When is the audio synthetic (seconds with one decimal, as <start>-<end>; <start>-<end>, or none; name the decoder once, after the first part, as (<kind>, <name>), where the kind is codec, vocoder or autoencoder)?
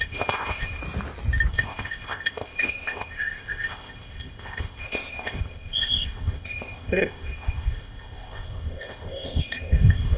0.0-0.8 (codec, ZipCodec); 1.5-10.2